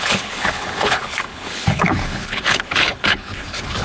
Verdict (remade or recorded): remade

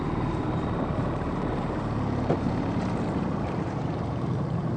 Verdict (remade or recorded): remade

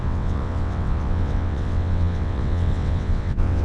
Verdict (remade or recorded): remade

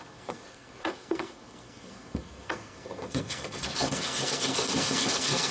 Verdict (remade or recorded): remade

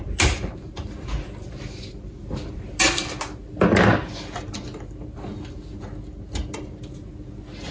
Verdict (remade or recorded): recorded